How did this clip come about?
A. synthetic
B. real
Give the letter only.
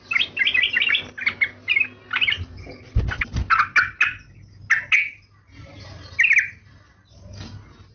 B